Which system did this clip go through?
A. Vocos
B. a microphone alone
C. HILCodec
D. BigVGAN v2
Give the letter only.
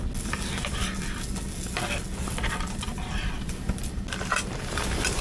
B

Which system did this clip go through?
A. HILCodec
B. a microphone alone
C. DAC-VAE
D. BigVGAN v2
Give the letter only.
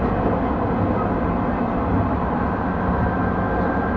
B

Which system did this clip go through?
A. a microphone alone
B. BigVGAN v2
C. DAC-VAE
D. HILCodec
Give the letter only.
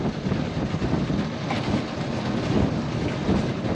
A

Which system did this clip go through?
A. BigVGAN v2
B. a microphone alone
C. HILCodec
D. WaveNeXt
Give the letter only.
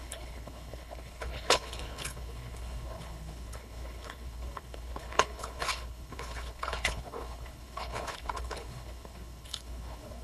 C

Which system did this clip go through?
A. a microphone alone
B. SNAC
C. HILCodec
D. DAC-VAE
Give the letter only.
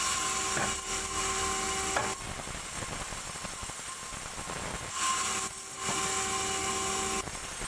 A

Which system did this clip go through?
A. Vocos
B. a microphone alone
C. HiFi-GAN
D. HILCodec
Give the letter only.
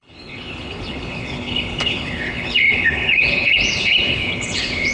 D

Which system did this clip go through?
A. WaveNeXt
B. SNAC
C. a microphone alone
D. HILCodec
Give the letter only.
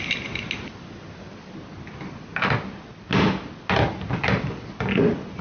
C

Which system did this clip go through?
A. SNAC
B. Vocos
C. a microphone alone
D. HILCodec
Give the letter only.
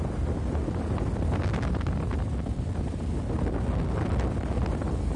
C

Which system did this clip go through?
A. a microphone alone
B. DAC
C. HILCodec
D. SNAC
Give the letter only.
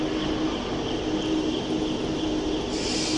A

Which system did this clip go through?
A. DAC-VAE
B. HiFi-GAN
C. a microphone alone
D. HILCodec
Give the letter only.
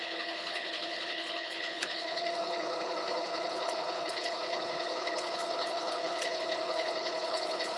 D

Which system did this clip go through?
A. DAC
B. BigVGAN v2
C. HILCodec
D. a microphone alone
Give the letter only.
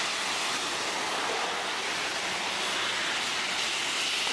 D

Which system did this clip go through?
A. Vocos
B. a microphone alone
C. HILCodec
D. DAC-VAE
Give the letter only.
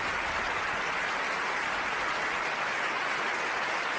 B